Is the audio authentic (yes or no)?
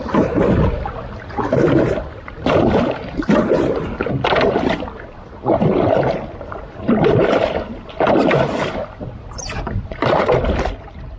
yes